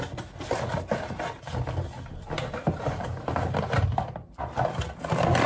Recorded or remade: recorded